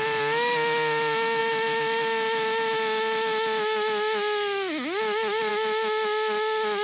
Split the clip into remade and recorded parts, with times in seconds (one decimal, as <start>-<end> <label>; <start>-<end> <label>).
0.0-6.8 recorded

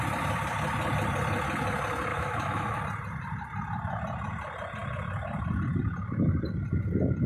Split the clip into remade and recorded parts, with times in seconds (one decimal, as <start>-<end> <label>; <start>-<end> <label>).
0.0-2.1 recorded; 2.1-2.8 remade; 2.8-7.3 recorded

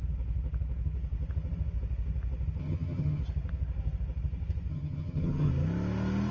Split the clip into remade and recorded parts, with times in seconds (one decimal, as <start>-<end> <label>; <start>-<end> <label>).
0.0-2.6 recorded; 2.6-3.2 remade; 3.2-4.7 recorded; 4.7-5.5 remade; 5.5-6.3 recorded

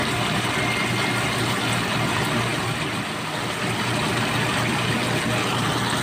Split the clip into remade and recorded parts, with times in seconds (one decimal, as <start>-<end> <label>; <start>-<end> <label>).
0.0-0.5 remade; 0.5-2.5 recorded; 2.5-4.8 remade; 4.8-6.0 recorded

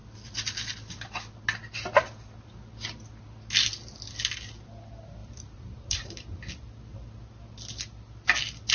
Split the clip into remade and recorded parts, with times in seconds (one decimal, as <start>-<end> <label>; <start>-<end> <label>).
0.0-5.2 recorded; 5.2-6.4 remade; 6.4-8.7 recorded